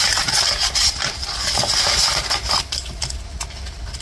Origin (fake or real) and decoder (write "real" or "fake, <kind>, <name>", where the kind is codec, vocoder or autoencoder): real